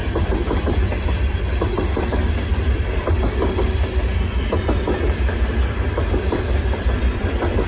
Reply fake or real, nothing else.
fake